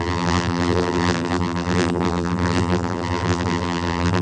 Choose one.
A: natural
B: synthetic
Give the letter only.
B